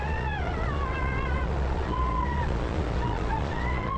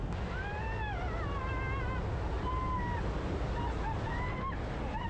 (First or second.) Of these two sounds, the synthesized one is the first